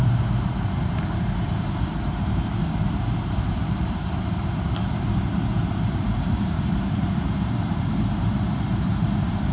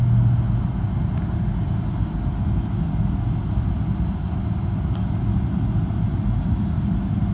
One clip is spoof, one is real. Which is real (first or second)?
second